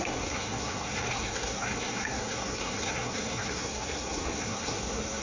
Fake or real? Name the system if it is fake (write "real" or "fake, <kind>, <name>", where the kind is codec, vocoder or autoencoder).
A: fake, codec, SNAC